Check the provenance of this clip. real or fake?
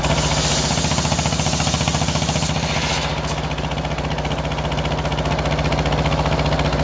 real